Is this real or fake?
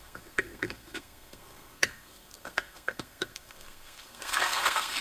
fake